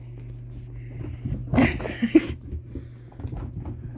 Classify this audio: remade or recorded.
recorded